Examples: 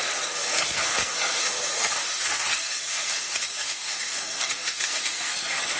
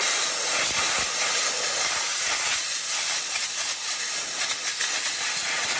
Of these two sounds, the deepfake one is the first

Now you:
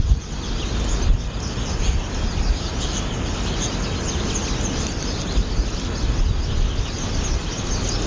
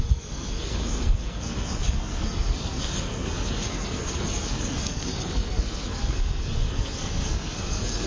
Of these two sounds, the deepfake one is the second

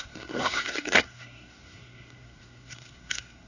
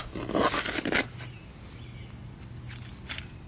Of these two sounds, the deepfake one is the first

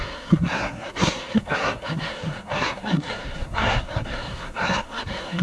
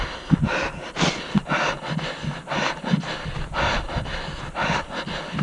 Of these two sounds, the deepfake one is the first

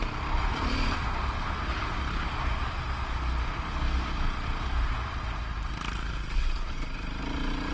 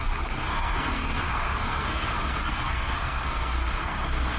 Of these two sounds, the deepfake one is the second